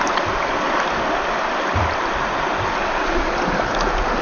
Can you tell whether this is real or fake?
real